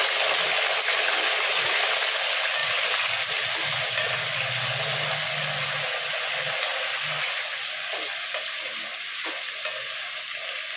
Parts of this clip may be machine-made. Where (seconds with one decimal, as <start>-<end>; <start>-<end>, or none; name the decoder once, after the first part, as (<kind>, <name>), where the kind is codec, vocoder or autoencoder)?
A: 2.6-3.3 (vocoder, BigVGAN v2); 6.7-8.5